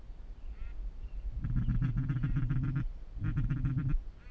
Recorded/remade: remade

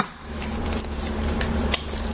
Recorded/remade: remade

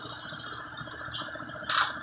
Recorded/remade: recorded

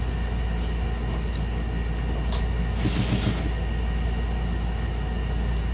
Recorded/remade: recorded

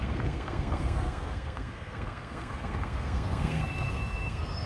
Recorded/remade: remade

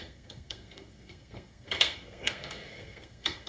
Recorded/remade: remade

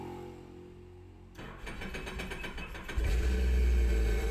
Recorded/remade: recorded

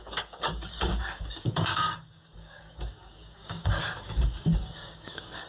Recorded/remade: remade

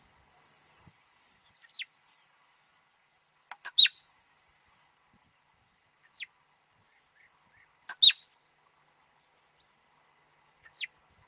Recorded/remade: recorded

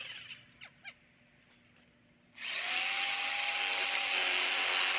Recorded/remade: recorded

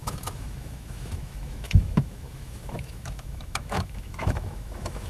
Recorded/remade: remade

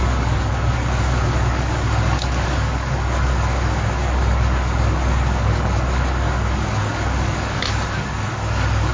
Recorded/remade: remade